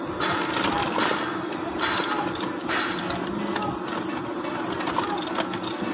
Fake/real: real